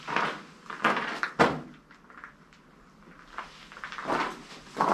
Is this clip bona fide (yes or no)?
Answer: yes